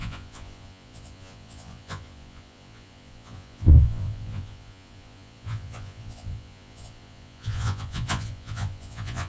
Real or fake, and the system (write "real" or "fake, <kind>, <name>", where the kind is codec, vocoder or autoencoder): fake, vocoder, Vocos